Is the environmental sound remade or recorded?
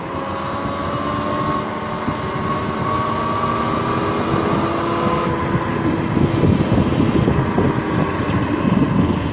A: recorded